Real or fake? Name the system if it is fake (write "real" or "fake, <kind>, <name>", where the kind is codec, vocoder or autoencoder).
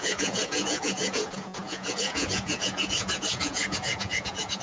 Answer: fake, vocoder, Vocos